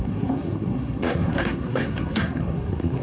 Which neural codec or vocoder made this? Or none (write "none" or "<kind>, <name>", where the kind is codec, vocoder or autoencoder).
codec, SNAC